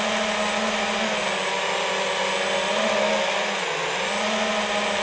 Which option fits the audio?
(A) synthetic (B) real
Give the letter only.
B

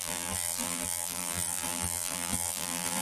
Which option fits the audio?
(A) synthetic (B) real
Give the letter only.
A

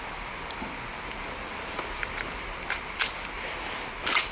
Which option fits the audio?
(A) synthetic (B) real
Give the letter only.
B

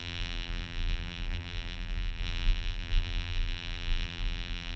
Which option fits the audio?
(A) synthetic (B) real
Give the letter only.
A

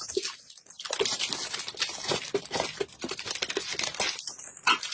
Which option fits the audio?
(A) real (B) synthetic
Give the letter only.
A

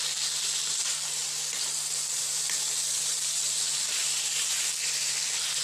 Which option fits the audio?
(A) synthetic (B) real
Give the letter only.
B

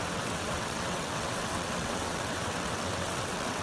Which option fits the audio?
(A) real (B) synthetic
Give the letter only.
B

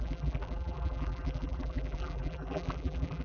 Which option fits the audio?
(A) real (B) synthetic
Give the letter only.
B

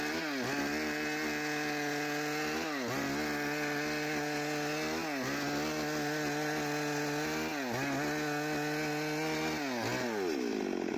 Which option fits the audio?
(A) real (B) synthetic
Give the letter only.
A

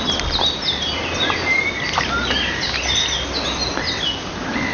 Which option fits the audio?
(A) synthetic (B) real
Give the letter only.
B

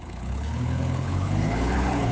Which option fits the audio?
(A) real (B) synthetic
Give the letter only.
B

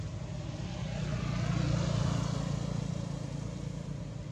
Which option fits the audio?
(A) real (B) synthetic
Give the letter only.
A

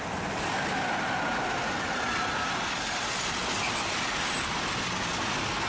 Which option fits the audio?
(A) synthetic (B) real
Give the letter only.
B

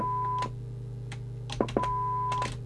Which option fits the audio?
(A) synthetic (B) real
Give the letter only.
B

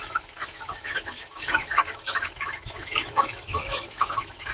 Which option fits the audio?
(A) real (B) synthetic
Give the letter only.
B